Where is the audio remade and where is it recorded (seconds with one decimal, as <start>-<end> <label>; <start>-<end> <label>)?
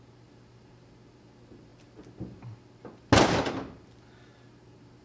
0.0-5.0 recorded